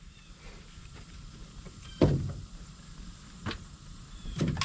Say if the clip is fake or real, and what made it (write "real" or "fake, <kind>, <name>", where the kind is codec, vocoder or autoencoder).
real